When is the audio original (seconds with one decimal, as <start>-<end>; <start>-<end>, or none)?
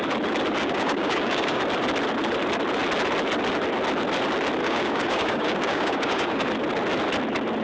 0.0-0.6; 1.6-4.6; 6.5-7.6